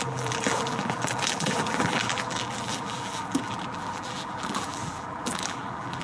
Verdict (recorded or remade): remade